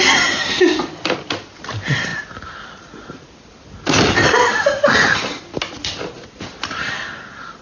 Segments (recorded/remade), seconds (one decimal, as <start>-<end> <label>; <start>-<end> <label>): 0.0-7.6 recorded